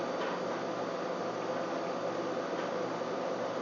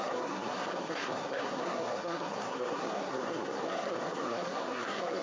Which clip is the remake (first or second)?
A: second